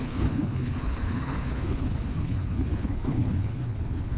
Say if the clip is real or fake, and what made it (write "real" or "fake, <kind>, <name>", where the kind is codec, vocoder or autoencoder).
fake, codec, HILCodec